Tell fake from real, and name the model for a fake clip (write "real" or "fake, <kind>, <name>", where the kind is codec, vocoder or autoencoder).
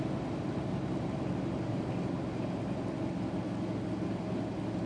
real